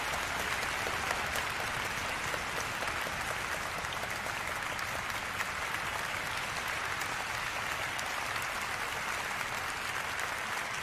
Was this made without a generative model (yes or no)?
yes